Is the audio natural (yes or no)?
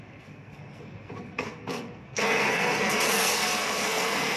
no